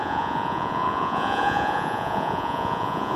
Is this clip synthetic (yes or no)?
yes